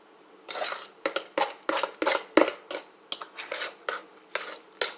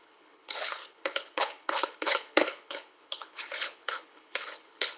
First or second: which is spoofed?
second